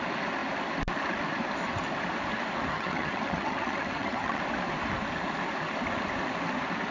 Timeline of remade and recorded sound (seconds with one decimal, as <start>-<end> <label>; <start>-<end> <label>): 0.0-2.7 recorded; 2.7-4.4 remade; 4.4-6.9 recorded